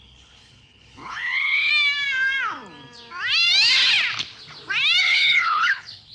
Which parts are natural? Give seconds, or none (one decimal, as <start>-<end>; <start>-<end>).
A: 1.7-5.0